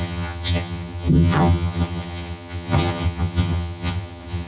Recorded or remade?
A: remade